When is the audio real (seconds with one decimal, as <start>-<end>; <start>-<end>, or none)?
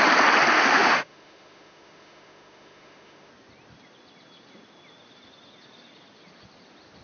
0.0-0.5; 3.3-7.0